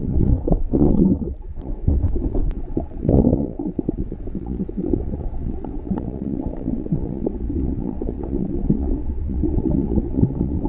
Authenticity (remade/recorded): remade